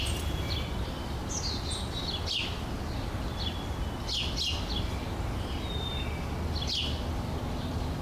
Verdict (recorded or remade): recorded